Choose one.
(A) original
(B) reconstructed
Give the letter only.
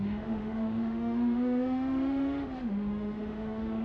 B